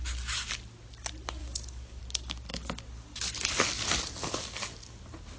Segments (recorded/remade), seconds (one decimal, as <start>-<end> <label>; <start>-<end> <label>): 0.0-1.4 recorded; 1.4-2.0 remade; 2.0-5.4 recorded